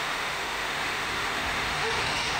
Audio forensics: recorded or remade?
remade